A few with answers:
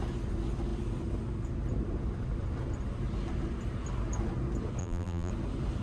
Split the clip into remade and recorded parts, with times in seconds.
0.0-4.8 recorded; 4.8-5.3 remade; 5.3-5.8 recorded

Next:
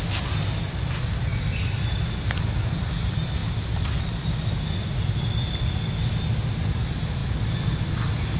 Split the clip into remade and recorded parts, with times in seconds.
0.0-8.4 recorded

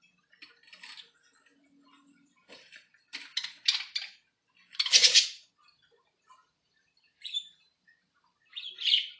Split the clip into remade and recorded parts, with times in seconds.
0.0-6.4 recorded; 6.4-9.2 remade